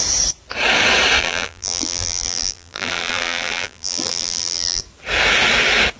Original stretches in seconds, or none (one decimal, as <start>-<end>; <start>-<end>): 0.0-1.2; 4.8-6.0